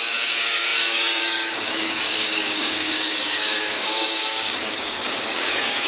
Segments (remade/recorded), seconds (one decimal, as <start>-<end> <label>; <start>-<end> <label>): 0.0-5.9 remade